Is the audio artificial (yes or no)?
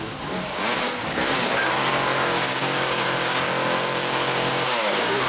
yes